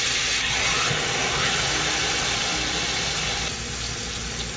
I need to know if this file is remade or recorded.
recorded